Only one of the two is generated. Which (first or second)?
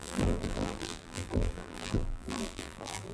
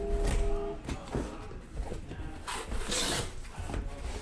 first